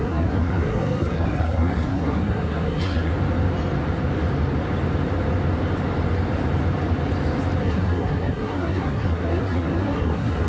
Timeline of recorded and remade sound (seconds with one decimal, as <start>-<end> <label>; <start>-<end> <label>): 0.0-3.1 remade; 3.1-7.6 recorded; 7.6-10.5 remade